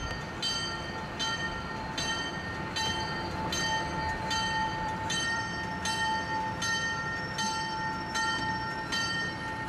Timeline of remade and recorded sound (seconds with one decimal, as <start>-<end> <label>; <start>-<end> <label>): 0.0-4.6 recorded; 4.6-5.4 remade; 5.4-9.7 recorded